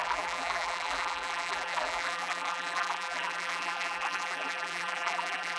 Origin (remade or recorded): remade